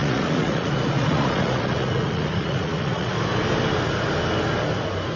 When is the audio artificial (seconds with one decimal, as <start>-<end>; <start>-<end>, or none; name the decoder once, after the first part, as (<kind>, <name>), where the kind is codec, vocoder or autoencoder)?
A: 0.0-3.1 (vocoder, Vocos)